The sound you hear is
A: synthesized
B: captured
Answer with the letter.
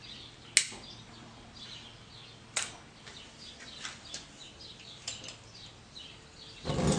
B